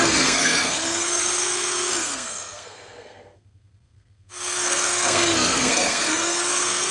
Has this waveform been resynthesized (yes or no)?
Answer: yes